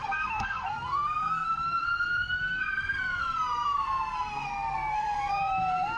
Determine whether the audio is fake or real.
fake